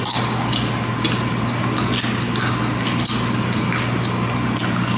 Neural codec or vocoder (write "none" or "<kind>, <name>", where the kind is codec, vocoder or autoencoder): none